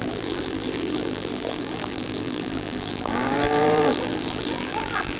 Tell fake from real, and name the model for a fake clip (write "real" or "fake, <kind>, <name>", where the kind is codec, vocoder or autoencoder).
fake, vocoder, BigVGAN v2